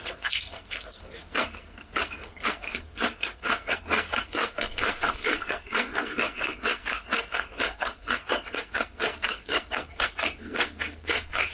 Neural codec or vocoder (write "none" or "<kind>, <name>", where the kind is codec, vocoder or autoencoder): codec, SNAC